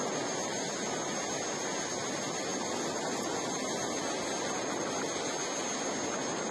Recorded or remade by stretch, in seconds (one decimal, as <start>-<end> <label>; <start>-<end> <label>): 0.0-6.5 recorded